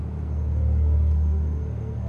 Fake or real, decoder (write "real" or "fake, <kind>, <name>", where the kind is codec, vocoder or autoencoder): fake, codec, SNAC